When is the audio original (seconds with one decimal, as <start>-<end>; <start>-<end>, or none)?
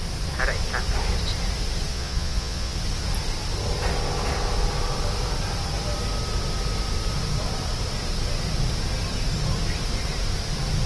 0.0-1.9; 2.8-10.9